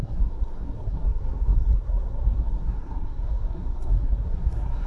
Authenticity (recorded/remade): remade